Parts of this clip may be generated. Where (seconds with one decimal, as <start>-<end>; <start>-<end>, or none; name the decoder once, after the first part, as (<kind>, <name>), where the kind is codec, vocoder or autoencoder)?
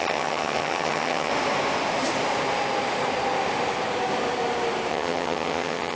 0.0-1.3 (vocoder, HiFi-GAN); 4.9-6.0